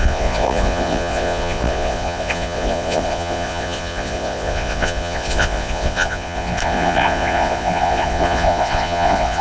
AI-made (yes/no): yes